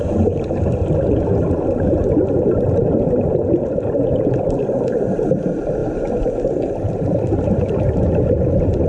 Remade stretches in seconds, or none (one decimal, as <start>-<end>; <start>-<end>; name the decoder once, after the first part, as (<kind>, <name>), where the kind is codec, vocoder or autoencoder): 0.0-0.8 (vocoder, BigVGAN v2); 4.6-5.8; 6.7-8.9